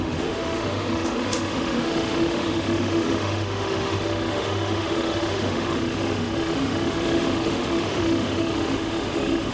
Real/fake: fake